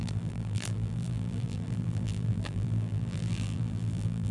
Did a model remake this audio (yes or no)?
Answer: yes